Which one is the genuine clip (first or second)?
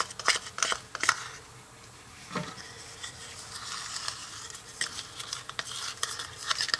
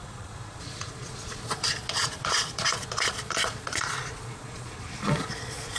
first